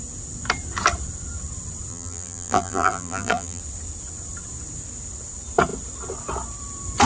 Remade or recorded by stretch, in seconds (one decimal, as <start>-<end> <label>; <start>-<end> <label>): 0.0-1.9 recorded; 1.9-3.6 remade; 3.6-7.1 recorded